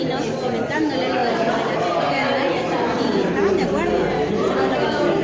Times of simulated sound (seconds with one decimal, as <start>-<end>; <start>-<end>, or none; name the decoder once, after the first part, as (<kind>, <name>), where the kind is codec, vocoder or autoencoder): none